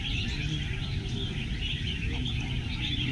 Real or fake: real